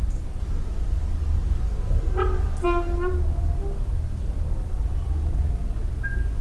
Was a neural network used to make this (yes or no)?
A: no